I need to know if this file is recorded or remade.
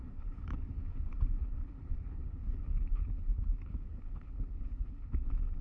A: remade